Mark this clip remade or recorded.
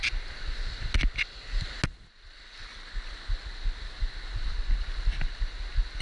recorded